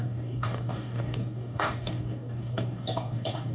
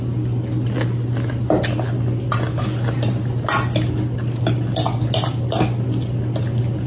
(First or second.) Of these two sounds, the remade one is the first